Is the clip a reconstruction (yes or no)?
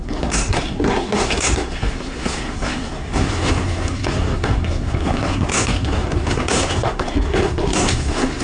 yes